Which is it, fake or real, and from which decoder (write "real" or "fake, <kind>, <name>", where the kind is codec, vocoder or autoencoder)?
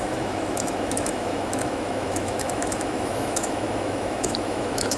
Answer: fake, autoencoder, DAC-VAE